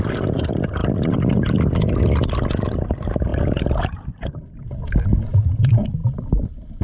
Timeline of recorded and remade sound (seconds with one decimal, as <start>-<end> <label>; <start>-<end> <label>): 0.0-6.8 recorded

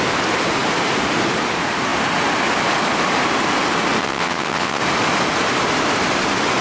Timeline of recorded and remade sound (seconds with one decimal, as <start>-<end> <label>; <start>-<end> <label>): 0.0-4.0 recorded; 4.0-4.8 remade; 4.8-6.6 recorded

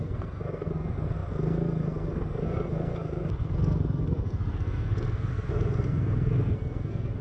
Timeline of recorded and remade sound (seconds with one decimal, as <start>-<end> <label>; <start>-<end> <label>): 0.0-7.2 remade

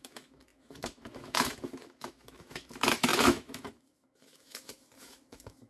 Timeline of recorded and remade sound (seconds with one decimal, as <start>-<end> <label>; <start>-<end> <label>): 0.0-5.7 remade

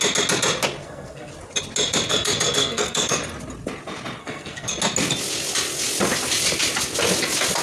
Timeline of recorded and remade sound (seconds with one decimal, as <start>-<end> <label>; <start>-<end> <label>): 0.0-0.8 recorded; 0.8-1.3 remade; 1.3-2.1 recorded; 2.1-3.2 remade; 3.2-4.2 recorded; 4.2-4.7 remade; 4.7-7.6 recorded

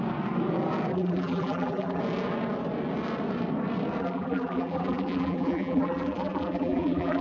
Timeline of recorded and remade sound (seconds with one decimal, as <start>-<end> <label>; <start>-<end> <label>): 0.0-0.9 recorded; 0.9-2.0 remade; 2.0-4.0 recorded; 4.0-7.2 remade